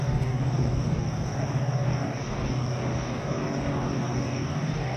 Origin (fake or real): fake